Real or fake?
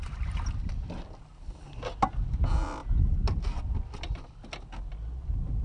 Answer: real